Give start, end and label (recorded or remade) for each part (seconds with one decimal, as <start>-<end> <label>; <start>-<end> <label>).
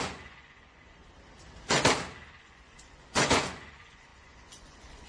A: 0.0-1.0 remade; 1.0-2.4 recorded; 2.4-5.1 remade